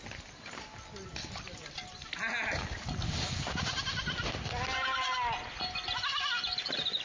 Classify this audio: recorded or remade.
recorded